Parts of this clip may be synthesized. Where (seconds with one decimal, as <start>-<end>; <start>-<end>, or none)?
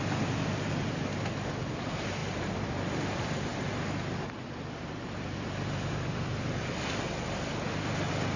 none